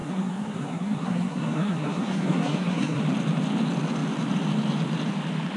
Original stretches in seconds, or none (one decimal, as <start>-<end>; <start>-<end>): 3.0-5.6